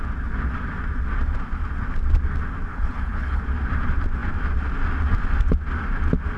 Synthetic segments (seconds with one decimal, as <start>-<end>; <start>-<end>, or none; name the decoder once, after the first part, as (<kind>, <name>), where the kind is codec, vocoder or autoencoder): 2.7-3.4 (codec, HILCodec)